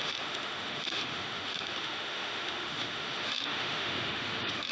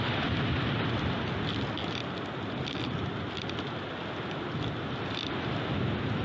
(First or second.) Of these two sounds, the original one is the second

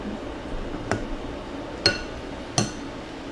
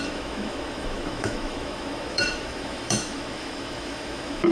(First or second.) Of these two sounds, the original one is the first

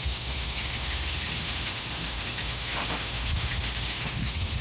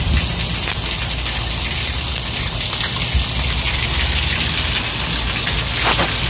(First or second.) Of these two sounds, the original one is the second